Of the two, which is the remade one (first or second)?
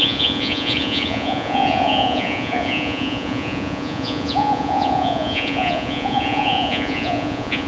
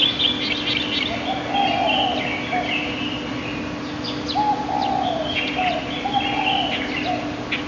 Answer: first